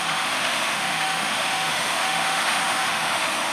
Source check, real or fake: fake